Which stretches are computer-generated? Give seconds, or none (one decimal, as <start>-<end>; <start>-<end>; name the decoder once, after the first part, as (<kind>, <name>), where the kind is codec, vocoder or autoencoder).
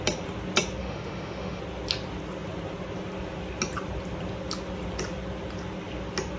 0.8-1.6 (autoencoder, DAC-VAE)